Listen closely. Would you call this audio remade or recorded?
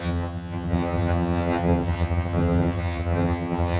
remade